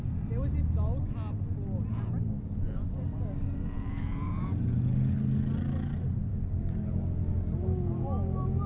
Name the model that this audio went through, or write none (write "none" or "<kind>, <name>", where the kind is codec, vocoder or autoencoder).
none